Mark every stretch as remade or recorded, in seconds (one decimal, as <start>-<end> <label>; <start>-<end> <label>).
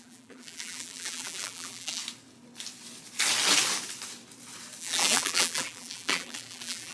0.0-2.0 remade; 2.0-4.8 recorded; 4.8-6.9 remade